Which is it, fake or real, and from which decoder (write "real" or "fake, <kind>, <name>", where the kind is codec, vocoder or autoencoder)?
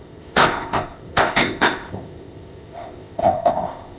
fake, codec, ZipCodec